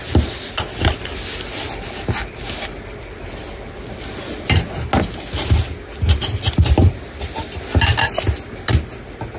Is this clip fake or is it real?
real